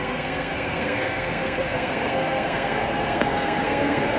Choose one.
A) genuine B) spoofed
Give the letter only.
B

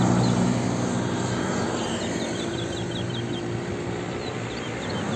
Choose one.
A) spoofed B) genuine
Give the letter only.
B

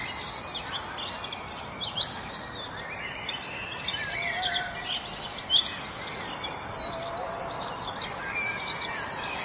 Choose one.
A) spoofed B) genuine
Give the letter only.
B